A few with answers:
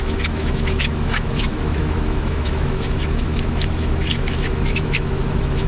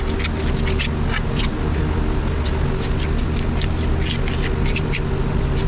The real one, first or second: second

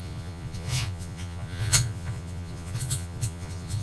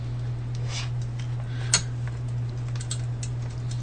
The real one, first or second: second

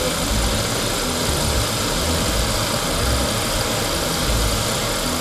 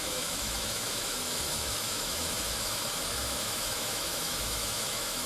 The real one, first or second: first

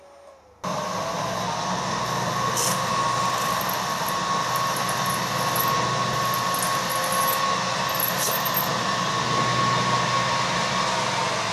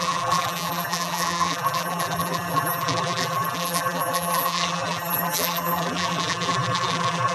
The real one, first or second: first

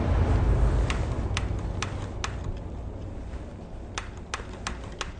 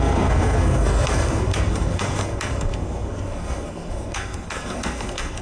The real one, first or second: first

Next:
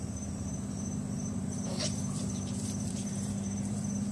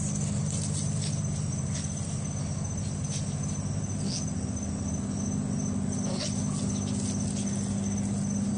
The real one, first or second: second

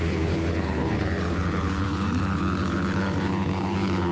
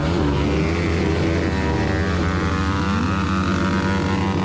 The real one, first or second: second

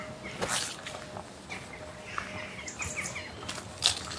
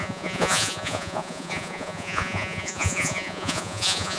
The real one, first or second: first